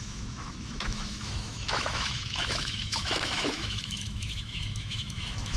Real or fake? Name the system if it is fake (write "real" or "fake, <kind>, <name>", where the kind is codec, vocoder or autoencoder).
fake, autoencoder, DAC-VAE